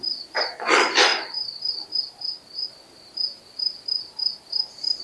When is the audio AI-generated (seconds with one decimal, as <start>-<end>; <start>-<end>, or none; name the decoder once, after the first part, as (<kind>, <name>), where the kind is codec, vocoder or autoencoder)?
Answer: none